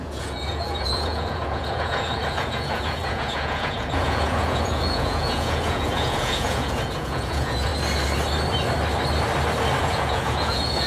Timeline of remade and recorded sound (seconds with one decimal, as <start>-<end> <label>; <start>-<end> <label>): 0.0-7.7 remade; 7.7-9.8 recorded; 9.8-10.9 remade